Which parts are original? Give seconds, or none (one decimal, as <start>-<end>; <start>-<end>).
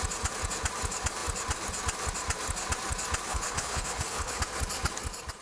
0.0-3.3; 4.4-5.4